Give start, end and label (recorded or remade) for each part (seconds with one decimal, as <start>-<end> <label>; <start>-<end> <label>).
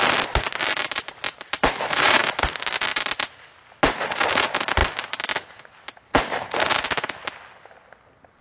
0.0-0.8 recorded; 0.8-2.3 remade; 2.3-8.4 recorded